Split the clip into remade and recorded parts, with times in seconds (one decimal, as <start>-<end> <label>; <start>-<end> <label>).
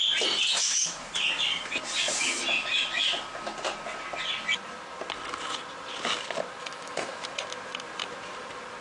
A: 0.0-0.5 recorded; 0.5-1.1 remade; 1.1-6.6 recorded; 6.6-7.2 remade; 7.2-8.8 recorded